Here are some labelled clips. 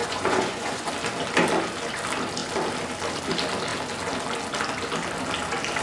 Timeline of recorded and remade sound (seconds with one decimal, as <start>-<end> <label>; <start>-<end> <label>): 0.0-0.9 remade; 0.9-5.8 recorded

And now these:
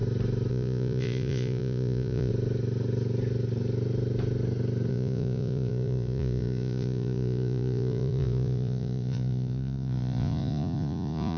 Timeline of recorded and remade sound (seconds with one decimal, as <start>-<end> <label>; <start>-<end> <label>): 0.0-0.5 recorded; 0.5-2.3 remade; 2.3-4.9 recorded; 4.9-11.4 remade

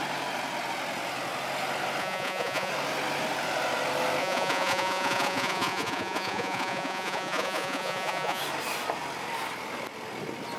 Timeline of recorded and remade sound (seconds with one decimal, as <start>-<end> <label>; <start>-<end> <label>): 0.0-2.0 recorded; 2.0-2.7 remade; 2.7-4.2 recorded; 4.2-8.4 remade; 8.4-10.6 recorded

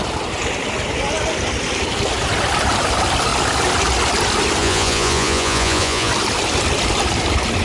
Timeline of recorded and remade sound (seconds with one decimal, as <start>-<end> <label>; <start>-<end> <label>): 0.0-4.6 recorded; 4.6-6.1 remade; 6.1-7.6 recorded

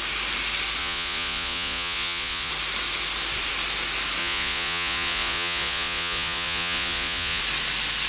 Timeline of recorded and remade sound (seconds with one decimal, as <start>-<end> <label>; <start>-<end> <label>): 0.0-0.8 recorded; 0.8-2.5 remade; 2.5-4.2 recorded; 4.2-7.4 remade; 7.4-8.1 recorded

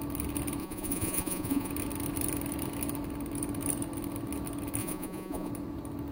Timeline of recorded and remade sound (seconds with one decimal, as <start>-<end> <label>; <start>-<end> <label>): 0.0-0.6 recorded; 0.6-1.7 remade; 1.7-4.8 recorded; 4.8-5.5 remade; 5.5-6.1 recorded

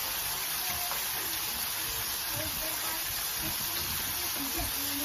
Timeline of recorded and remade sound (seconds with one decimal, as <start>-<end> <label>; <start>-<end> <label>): 0.0-5.0 recorded